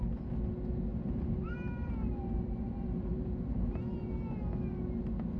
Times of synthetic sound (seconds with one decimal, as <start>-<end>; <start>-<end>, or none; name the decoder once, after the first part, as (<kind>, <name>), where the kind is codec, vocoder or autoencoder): 0.9-4.1 (vocoder, BigVGAN v2)